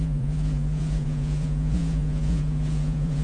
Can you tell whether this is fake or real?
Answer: fake